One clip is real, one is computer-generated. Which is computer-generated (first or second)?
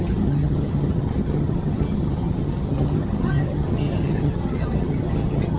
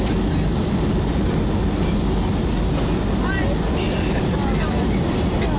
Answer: first